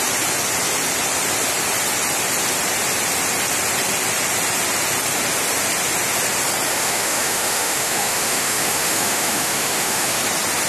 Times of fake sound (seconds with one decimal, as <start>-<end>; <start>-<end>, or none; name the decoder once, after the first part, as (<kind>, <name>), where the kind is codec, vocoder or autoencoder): 6.7-10.2 (autoencoder, DAC-VAE)